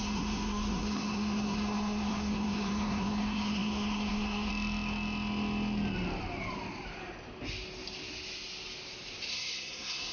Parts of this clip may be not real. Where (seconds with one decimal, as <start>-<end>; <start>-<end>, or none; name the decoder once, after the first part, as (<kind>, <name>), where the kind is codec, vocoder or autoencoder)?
0.0-4.5 (codec, SNAC); 9.3-10.1